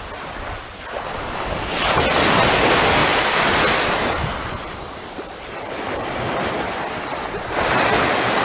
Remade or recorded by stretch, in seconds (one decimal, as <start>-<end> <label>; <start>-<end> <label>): 0.0-3.0 recorded; 3.0-7.4 remade; 7.4-8.4 recorded